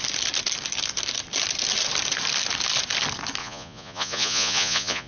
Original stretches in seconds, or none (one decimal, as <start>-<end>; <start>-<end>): 0.0-3.4